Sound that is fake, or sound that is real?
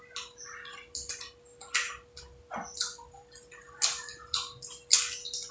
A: real